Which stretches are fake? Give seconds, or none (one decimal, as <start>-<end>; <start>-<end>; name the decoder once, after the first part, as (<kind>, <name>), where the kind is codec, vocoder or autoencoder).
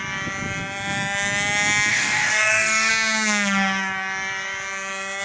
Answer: 1.9-2.9 (codec, DAC)